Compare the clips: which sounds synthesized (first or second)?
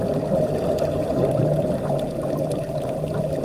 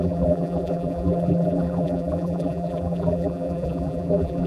second